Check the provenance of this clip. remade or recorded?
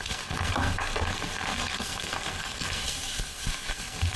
remade